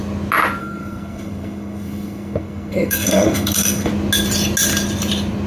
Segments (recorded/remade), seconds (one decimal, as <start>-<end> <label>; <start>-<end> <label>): 0.0-0.6 recorded; 0.6-3.9 remade; 3.9-5.5 recorded